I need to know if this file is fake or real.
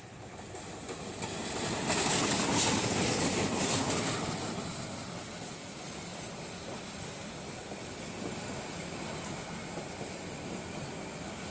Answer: real